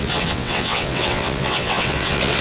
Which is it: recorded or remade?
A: remade